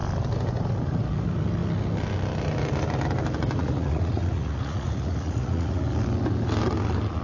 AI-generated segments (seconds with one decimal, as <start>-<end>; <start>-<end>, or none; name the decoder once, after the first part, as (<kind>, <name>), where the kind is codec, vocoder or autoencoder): 3.6-5.8 (vocoder, Vocos)